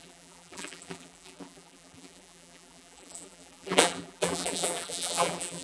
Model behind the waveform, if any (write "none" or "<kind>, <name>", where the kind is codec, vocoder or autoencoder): vocoder, BigVGAN v2